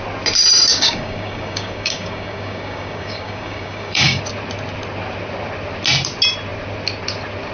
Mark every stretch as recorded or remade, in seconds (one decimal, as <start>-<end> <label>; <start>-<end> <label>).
0.0-0.7 recorded; 0.7-4.2 remade; 4.2-7.5 recorded